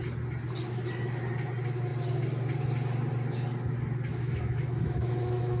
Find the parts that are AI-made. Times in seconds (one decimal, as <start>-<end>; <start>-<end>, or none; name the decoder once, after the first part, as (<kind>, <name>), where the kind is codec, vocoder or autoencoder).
4.1-5.6 (autoencoder, DAC-VAE)